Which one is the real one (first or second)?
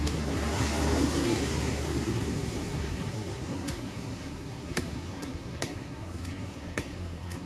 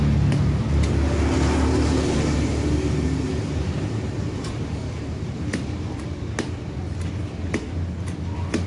second